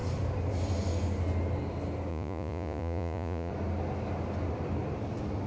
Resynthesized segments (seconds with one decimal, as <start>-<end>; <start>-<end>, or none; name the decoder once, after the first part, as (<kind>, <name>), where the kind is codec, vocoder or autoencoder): 2.1-3.5 (vocoder, Vocos)